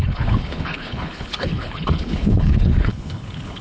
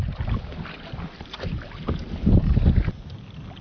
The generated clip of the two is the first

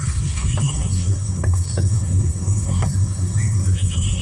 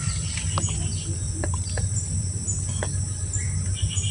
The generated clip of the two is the first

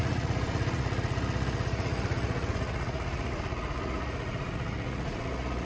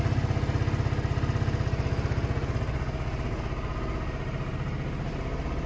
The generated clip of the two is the first